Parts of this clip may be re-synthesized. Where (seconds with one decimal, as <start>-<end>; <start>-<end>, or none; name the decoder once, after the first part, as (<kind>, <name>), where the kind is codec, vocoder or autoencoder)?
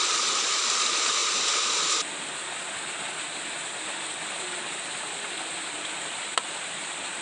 none